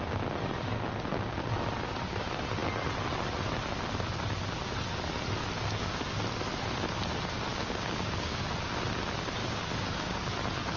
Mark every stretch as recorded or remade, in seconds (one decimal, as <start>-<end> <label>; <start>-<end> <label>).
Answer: 0.0-7.5 recorded; 7.5-8.4 remade; 8.4-9.4 recorded; 9.4-10.3 remade; 10.3-10.8 recorded